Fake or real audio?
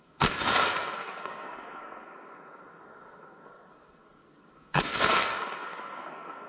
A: fake